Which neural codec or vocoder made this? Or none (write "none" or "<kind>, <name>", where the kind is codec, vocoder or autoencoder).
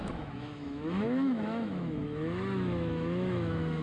autoencoder, DAC-VAE